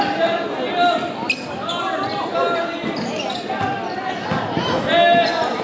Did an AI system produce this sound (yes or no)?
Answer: no